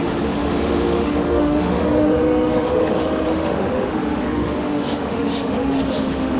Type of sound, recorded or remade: remade